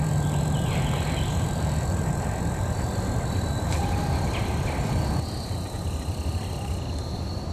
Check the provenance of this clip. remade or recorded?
remade